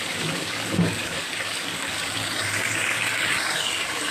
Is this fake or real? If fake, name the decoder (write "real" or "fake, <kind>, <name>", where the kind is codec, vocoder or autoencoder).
fake, codec, DAC